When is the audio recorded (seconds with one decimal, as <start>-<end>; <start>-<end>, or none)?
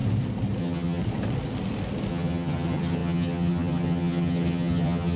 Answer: 0.0-0.6; 1.0-2.1